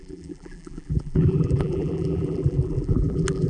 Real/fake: fake